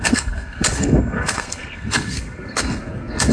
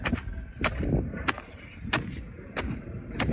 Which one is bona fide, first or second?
second